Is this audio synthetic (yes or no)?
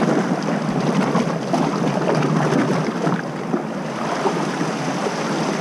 no